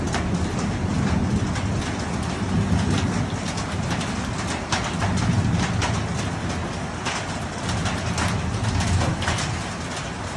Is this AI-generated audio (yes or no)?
no